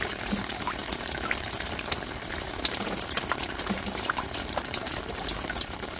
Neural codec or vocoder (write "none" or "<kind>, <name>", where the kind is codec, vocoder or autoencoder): vocoder, BigVGAN v2